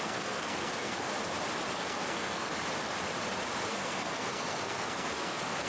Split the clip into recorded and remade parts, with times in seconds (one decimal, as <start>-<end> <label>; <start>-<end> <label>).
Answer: 0.0-1.1 remade; 1.1-1.7 recorded; 1.7-2.5 remade; 2.5-3.7 recorded; 3.7-5.7 remade